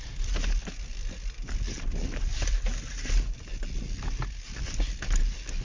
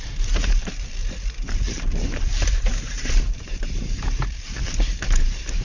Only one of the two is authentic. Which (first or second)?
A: first